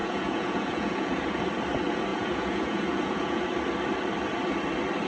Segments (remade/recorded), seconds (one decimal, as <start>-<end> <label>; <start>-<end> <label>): 0.0-1.4 remade; 1.4-2.1 recorded; 2.1-3.4 remade; 3.4-5.1 recorded